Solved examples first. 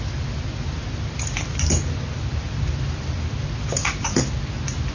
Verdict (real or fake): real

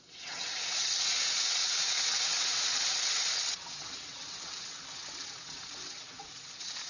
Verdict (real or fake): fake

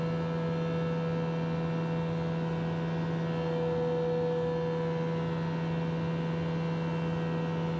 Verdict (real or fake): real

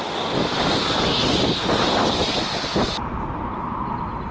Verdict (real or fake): real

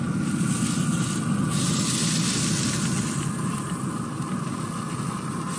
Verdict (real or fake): real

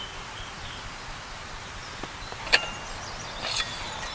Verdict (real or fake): real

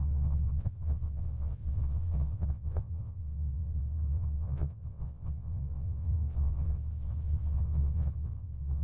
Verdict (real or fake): fake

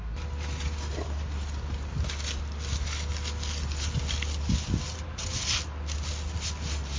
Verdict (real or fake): real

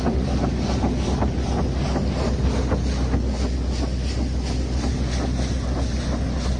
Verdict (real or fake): real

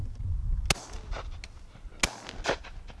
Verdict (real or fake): real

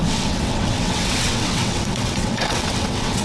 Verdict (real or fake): fake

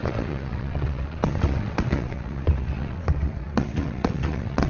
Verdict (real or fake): fake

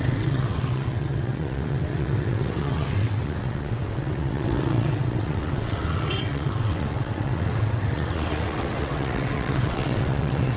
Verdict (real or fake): fake